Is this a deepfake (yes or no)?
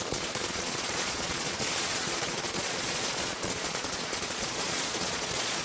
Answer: yes